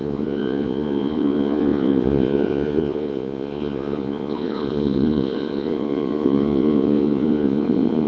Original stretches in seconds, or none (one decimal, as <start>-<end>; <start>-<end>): none